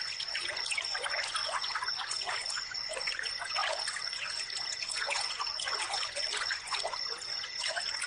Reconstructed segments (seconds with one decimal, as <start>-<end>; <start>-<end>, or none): 0.0-8.1

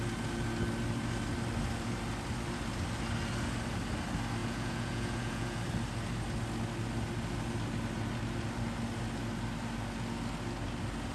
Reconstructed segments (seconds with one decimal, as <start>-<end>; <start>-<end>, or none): 4.4-5.6

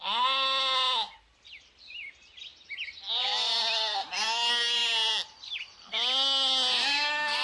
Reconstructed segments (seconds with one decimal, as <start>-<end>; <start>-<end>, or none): none

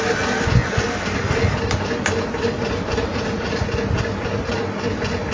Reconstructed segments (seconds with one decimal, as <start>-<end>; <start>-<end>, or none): 3.1-3.7

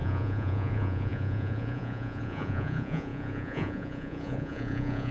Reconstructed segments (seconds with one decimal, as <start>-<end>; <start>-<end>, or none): 0.0-5.1

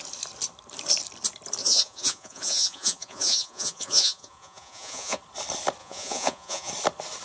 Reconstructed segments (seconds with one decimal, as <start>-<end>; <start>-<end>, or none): 1.6-5.2; 5.8-6.7